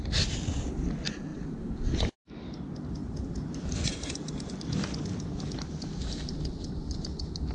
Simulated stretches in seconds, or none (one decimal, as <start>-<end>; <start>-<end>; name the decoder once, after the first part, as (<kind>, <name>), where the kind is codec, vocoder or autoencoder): 1.3-2.1 (vocoder, BigVGAN v2); 3.0-4.5